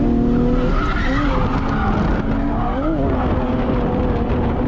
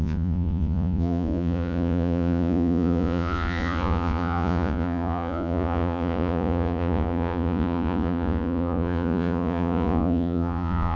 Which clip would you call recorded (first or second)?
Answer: first